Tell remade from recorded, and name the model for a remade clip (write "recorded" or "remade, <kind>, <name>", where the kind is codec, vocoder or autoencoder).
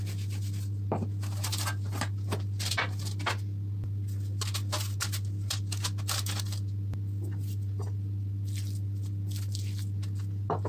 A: recorded